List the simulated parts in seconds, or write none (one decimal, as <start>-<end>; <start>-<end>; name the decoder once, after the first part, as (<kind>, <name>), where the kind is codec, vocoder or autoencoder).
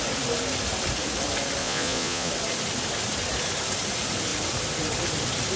1.6-2.3 (vocoder, Vocos)